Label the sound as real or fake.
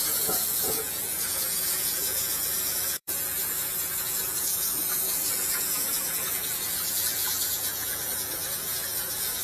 fake